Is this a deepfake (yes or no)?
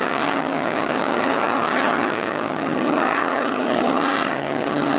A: yes